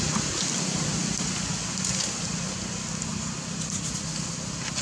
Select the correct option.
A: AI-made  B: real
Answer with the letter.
B